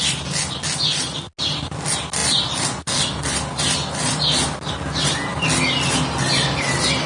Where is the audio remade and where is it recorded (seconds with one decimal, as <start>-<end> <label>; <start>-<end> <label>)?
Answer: 0.0-7.1 recorded